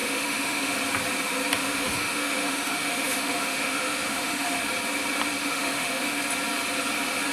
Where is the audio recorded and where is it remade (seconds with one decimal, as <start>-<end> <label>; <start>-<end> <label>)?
0.0-0.8 remade; 0.8-1.6 recorded; 1.6-4.6 remade; 4.6-5.4 recorded; 5.4-6.2 remade; 6.2-7.3 recorded